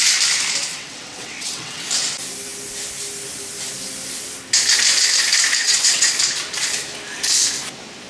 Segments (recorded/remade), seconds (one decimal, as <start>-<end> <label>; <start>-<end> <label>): 0.0-0.7 recorded; 0.7-1.8 remade; 1.8-5.6 recorded; 5.6-6.1 remade; 6.1-8.1 recorded